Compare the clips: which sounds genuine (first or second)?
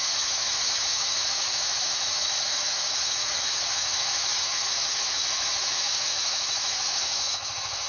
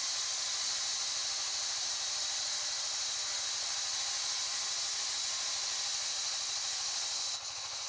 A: second